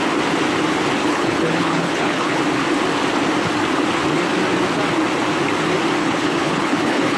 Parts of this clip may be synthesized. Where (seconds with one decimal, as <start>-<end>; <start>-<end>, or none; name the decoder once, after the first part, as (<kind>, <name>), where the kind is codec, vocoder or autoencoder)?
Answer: 1.0-2.4 (codec, HILCodec); 6.0-7.2